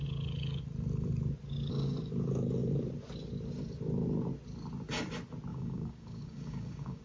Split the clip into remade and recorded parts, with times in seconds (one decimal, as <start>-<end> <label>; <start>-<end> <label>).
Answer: 0.0-5.5 recorded; 5.5-7.0 remade